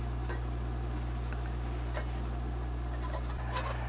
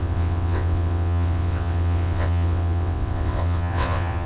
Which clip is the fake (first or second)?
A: second